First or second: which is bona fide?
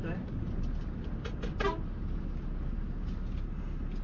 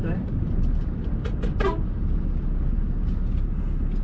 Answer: first